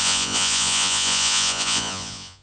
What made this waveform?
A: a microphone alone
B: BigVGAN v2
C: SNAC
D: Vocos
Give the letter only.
D